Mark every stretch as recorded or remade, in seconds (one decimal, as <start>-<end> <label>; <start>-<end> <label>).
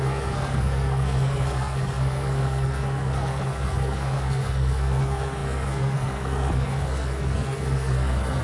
0.0-8.4 remade